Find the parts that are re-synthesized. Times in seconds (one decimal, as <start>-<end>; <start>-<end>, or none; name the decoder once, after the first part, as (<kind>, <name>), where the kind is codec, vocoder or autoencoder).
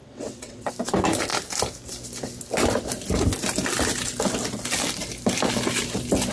0.0-0.7 (vocoder, WaveNeXt)